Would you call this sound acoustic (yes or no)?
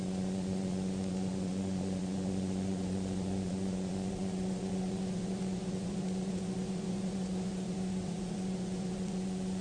no